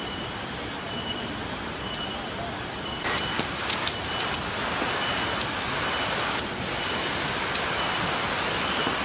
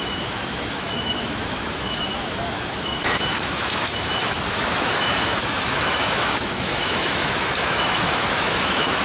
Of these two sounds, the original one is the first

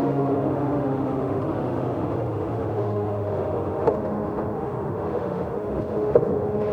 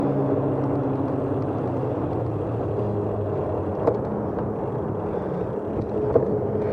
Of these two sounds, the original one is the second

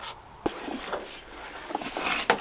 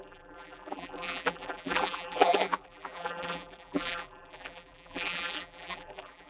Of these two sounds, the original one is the first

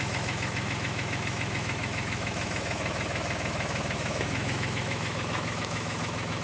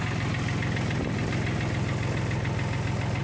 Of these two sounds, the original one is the second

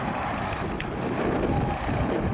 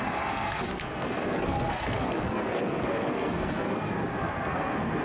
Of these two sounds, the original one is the first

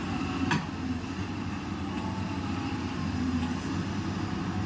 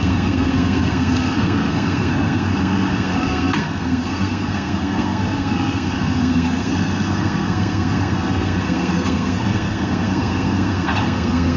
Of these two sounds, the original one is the first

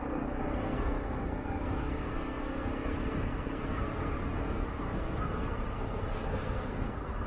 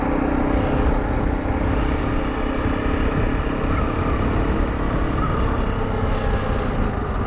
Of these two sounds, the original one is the second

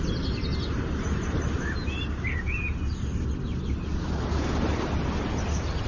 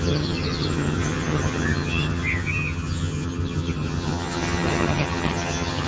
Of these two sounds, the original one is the first